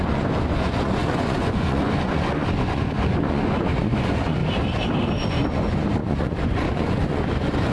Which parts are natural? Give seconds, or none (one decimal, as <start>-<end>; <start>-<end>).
4.4-5.3